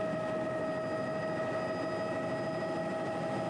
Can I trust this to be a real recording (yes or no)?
yes